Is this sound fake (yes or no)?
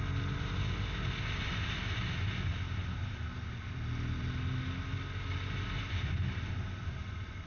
no